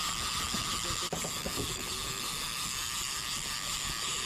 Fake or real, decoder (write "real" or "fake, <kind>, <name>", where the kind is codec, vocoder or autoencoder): real